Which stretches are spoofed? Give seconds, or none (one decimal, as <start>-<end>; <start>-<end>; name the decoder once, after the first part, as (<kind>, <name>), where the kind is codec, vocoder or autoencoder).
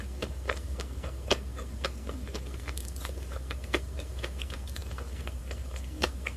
0.0-6.4 (codec, SNAC)